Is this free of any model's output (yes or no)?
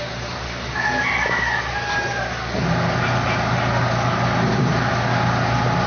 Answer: yes